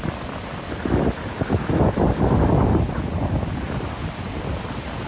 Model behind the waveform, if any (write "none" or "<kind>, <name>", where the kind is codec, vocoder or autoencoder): none